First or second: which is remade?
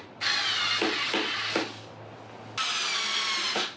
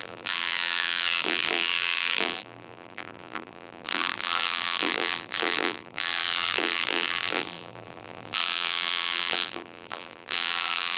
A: second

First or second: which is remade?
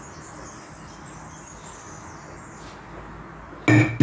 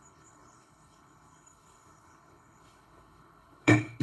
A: second